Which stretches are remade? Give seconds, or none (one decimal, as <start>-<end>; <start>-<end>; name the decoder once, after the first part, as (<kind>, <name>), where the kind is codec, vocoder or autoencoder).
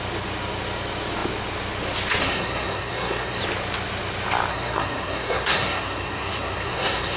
2.2-3.4 (codec, SNAC); 4.5-7.2